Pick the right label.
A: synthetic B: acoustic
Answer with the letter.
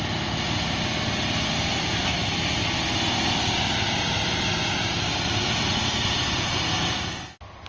B